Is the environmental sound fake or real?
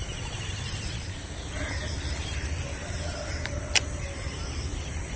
fake